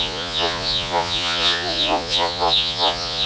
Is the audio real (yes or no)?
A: no